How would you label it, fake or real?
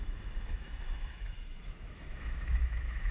fake